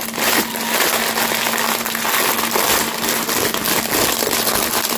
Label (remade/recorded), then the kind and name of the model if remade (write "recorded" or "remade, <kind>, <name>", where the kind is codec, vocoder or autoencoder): recorded